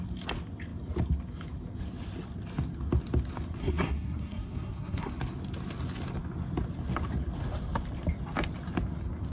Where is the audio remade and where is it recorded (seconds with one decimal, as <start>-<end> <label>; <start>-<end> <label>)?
0.0-3.6 recorded; 3.6-5.1 remade; 5.1-9.3 recorded